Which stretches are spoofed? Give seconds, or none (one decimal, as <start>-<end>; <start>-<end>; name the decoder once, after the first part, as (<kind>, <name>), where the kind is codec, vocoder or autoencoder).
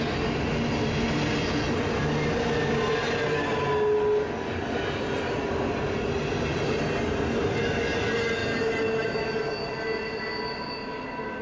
none